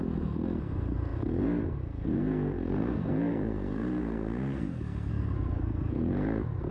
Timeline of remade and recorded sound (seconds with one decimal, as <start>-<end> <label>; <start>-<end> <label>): 0.0-6.7 remade

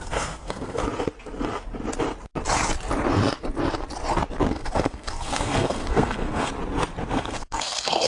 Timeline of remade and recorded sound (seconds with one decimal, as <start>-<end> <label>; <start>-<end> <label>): 0.0-0.8 remade; 0.8-4.5 recorded; 4.5-6.5 remade; 6.5-7.1 recorded; 7.1-8.1 remade

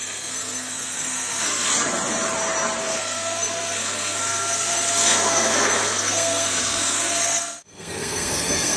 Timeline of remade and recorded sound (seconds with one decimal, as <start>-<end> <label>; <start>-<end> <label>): 0.0-1.7 remade; 1.7-2.8 recorded; 2.8-8.8 remade

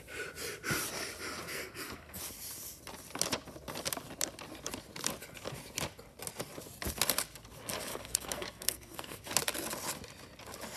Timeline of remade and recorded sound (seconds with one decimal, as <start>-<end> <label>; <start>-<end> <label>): 0.0-1.4 recorded; 1.4-2.2 remade; 2.2-7.9 recorded; 7.9-9.2 remade; 9.2-10.8 recorded

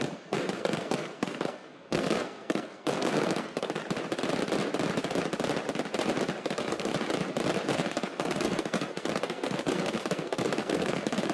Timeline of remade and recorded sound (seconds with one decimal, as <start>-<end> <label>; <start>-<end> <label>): 0.0-3.8 remade; 3.8-6.4 recorded; 6.4-6.9 remade; 6.9-7.7 recorded; 7.7-11.3 remade

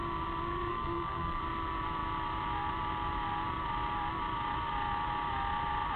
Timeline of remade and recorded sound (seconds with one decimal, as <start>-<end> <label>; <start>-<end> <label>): 0.0-0.7 recorded; 0.7-1.4 remade; 1.4-6.0 recorded

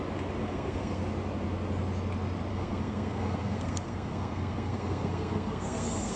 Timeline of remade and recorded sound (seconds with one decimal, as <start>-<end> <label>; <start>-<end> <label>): 0.0-0.4 recorded; 0.4-1.0 remade; 1.0-2.5 recorded; 2.5-6.2 remade